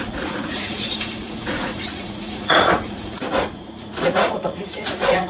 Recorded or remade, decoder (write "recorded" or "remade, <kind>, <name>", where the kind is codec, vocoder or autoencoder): remade, vocoder, Vocos